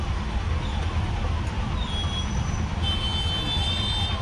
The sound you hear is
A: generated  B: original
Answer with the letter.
A